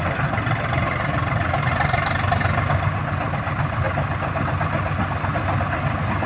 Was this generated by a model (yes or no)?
no